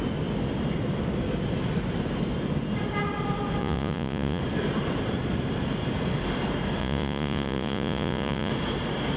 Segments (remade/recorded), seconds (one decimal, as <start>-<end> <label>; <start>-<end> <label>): 0.0-3.6 recorded; 3.6-4.4 remade; 4.4-6.8 recorded; 6.8-8.5 remade; 8.5-9.2 recorded